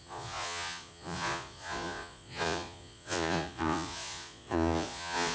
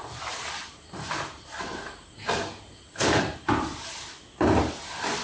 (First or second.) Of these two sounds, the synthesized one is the first